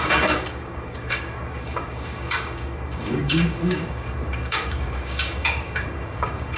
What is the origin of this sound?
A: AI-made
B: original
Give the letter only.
A